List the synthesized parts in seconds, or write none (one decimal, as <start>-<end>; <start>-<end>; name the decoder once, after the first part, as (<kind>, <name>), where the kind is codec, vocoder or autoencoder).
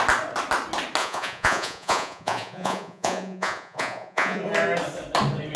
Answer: 1.0-4.4 (vocoder, Vocos)